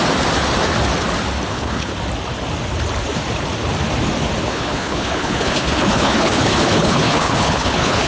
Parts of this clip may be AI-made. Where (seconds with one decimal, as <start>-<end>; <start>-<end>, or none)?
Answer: 1.5-1.9; 4.5-8.1